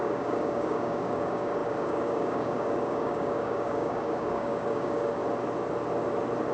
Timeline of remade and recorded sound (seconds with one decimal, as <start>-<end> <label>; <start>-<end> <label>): 0.0-5.2 remade; 5.2-6.5 recorded